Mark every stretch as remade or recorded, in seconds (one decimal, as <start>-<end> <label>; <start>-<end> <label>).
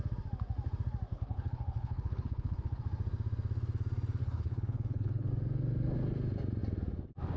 0.0-1.1 recorded; 1.1-2.8 remade; 2.8-4.2 recorded; 4.2-5.3 remade; 5.3-7.4 recorded